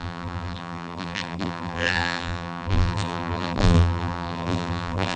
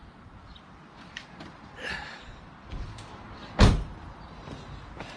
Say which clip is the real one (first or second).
second